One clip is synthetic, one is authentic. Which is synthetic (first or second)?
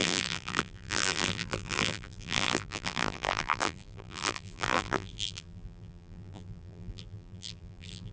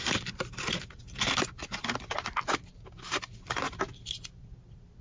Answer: first